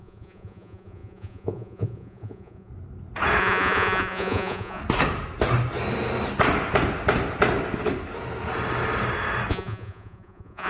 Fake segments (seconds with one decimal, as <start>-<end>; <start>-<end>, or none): 0.0-2.7; 3.4-4.8; 9.5-10.7